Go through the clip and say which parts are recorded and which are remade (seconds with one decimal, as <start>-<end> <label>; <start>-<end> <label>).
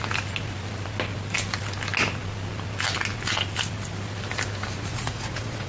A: 0.0-4.9 recorded; 4.9-5.7 remade